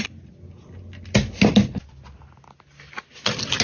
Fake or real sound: real